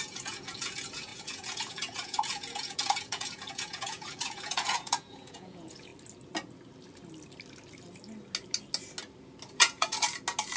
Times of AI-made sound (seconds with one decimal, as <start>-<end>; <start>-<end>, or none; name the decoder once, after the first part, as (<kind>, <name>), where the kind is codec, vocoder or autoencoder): 0.0-5.9 (vocoder, Vocos); 9.5-9.9